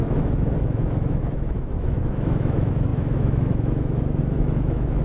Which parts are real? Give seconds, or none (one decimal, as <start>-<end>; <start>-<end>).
none